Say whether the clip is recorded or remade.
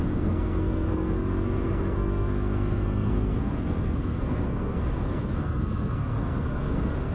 remade